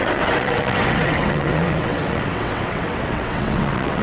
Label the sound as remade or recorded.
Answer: remade